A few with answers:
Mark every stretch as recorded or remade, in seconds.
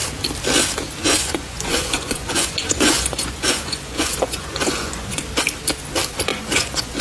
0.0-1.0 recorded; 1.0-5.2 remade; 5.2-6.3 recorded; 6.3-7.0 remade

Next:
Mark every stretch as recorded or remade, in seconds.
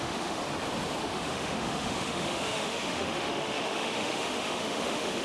0.0-0.4 remade; 0.4-1.0 recorded; 1.0-5.2 remade